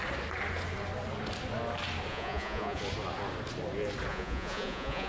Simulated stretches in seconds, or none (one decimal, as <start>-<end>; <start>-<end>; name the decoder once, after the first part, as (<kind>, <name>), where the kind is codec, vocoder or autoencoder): 2.1-2.8 (vocoder, Vocos); 4.1-5.1